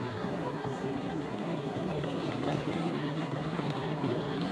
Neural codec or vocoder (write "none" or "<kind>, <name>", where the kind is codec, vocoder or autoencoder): codec, SNAC